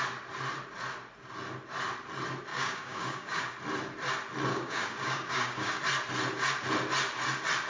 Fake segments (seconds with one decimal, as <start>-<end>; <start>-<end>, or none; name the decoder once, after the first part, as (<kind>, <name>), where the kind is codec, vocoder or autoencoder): 2.5-3.4 (codec, DAC); 4.5-5.8